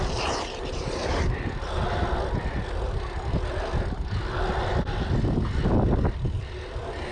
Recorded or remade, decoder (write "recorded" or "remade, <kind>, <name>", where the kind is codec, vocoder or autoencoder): recorded